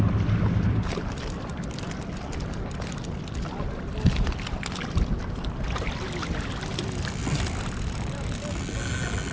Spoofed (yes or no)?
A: no